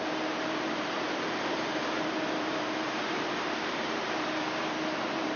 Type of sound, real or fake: fake